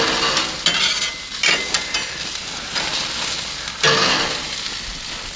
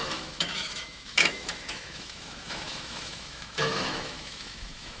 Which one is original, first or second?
first